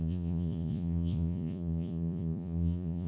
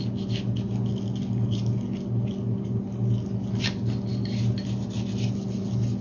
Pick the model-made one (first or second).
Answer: first